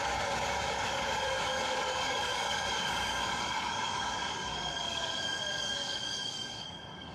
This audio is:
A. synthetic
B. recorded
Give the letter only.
A